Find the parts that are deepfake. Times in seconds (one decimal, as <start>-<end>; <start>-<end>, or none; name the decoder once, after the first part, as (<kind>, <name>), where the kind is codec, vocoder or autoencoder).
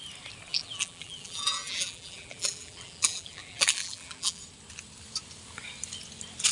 0.5-4.4 (vocoder, BigVGAN v2)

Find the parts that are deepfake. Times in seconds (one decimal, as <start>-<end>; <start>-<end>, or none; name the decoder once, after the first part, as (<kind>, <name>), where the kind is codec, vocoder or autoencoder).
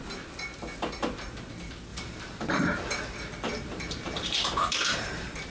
1.9-5.5 (vocoder, BigVGAN v2)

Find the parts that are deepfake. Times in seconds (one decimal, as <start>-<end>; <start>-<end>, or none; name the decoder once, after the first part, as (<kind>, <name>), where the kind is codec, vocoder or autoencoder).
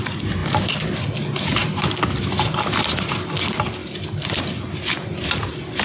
none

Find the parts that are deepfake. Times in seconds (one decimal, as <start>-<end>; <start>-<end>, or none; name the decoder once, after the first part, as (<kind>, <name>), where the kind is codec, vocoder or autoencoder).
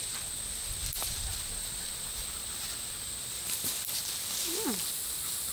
none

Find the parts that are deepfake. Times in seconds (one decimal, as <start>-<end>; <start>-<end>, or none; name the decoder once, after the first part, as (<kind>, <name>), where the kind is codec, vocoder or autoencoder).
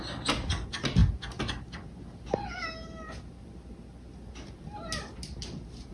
none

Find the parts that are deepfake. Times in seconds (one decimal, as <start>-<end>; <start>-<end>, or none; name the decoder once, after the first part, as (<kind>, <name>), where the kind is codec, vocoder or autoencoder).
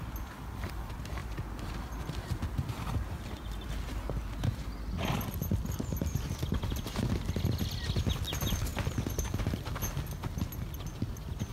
none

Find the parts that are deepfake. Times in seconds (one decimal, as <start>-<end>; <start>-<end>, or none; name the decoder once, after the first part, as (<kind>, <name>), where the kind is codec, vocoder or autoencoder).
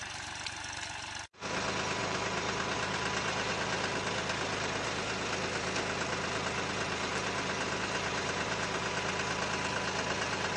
0.0-0.6 (vocoder, BigVGAN v2); 2.0-3.5; 7.1-9.1